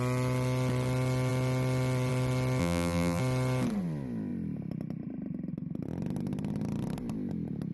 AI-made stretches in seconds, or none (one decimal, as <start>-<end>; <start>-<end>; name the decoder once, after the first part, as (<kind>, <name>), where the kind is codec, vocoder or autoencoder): 2.6-3.2 (vocoder, BigVGAN v2)